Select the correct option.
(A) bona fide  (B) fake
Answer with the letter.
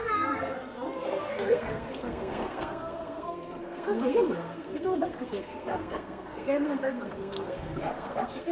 B